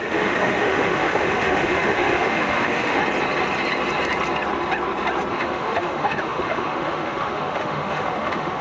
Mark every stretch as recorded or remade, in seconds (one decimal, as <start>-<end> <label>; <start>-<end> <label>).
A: 0.0-3.0 remade; 3.0-5.3 recorded; 5.3-8.6 remade